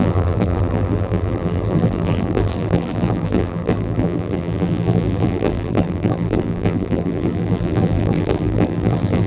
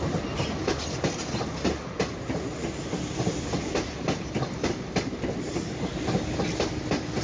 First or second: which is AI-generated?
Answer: first